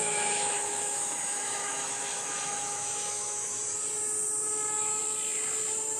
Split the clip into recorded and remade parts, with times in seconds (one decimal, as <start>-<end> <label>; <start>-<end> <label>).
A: 0.0-3.6 remade; 3.6-6.0 recorded